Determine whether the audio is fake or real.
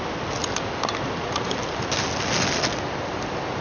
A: real